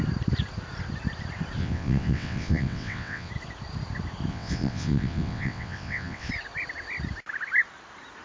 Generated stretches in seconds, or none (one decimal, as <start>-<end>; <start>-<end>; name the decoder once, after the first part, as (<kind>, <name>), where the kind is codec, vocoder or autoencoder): 1.6-3.3 (vocoder, WaveNeXt); 4.3-6.3